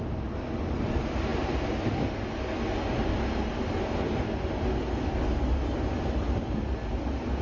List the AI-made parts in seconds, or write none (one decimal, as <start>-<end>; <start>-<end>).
none

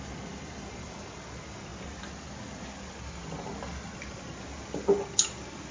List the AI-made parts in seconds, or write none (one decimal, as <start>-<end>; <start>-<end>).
none

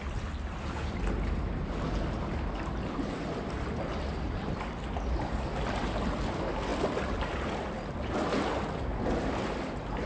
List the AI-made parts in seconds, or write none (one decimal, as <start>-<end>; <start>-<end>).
none